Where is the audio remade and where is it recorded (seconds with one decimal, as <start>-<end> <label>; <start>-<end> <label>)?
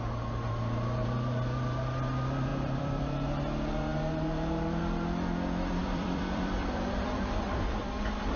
0.0-2.5 recorded; 2.5-3.3 remade; 3.3-5.8 recorded; 5.8-7.8 remade; 7.8-8.4 recorded